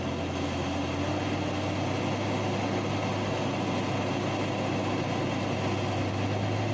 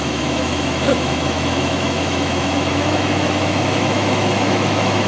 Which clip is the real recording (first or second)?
first